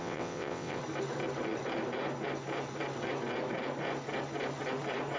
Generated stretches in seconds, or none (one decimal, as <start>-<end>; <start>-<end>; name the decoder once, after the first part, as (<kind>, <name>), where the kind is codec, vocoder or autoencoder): 0.0-0.8 (vocoder, WaveNeXt)